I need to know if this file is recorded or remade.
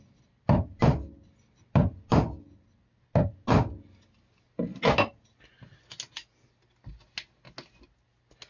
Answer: recorded